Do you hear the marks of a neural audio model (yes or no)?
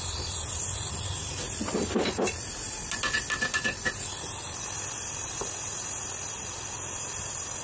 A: no